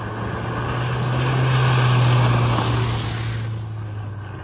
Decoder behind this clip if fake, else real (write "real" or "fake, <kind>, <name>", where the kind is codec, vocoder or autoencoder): real